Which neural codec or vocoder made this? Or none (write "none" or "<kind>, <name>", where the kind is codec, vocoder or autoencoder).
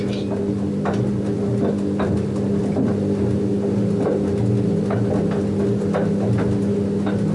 none